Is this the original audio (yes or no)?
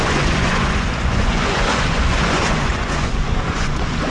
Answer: no